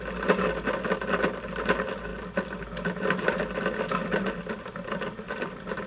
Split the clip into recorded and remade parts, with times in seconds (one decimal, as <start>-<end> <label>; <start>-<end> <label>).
0.0-5.9 recorded